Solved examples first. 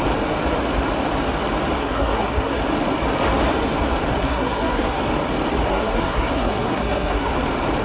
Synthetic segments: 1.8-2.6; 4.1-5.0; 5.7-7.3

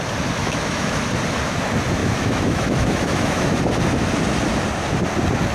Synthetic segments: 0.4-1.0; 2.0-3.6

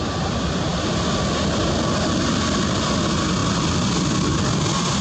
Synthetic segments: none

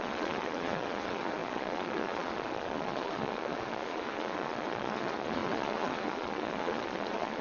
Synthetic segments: 0.0-7.4